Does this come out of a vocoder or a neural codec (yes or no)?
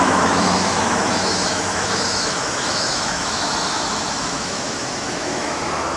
yes